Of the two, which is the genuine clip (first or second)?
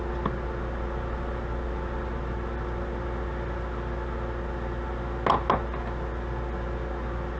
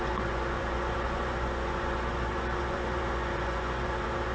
first